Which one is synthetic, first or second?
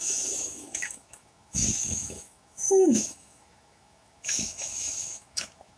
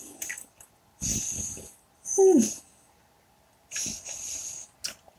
first